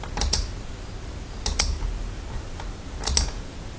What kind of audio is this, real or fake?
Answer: real